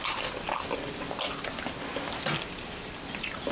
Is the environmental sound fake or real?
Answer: real